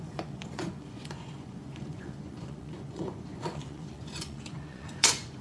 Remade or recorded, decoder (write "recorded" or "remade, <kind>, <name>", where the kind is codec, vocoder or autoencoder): remade, vocoder, Vocos